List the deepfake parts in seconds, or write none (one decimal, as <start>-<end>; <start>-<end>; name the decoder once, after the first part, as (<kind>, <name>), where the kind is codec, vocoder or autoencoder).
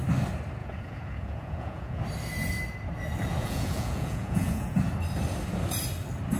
0.6-2.0 (vocoder, Vocos); 3.4-4.8